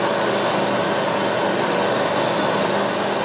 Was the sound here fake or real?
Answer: real